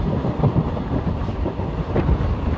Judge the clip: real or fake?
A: real